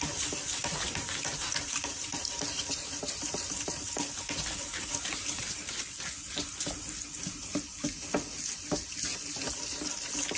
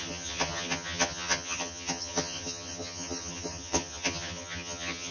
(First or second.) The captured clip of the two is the first